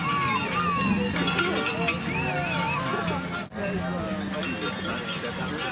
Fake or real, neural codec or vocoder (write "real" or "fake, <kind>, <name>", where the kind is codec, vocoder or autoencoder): real